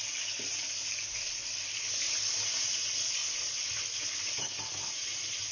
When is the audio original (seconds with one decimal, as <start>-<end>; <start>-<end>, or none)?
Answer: 0.0-5.5